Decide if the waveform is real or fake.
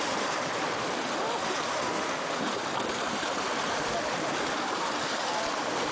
real